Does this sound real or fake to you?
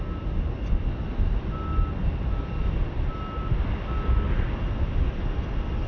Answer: real